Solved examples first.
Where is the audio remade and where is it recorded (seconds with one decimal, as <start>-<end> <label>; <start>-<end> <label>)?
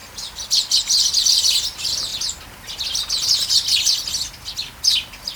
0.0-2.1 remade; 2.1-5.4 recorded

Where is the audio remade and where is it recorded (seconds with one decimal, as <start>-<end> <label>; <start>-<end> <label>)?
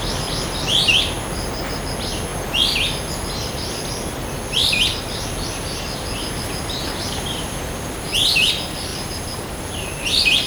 0.0-8.9 recorded; 8.9-9.9 remade; 9.9-10.5 recorded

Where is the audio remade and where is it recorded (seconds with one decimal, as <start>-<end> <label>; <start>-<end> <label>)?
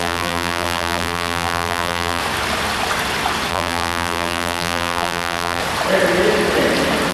0.0-2.2 remade; 2.2-3.5 recorded; 3.5-5.6 remade; 5.6-7.1 recorded